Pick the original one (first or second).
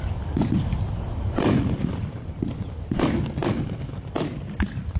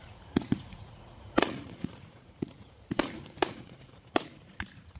first